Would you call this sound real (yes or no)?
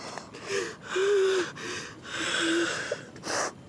yes